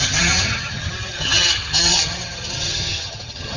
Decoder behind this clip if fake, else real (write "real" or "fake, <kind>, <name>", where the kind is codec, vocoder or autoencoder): fake, vocoder, HiFi-GAN